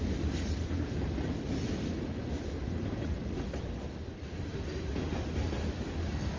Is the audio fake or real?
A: real